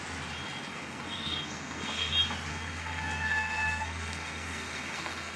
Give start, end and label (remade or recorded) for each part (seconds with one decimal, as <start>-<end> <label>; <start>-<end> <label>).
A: 0.0-0.7 recorded; 0.7-2.1 remade; 2.1-2.5 recorded; 2.5-5.4 remade